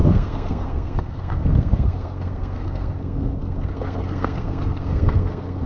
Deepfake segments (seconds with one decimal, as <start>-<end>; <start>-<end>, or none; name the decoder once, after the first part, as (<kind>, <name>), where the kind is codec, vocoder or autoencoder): 0.0-5.7 (codec, SNAC)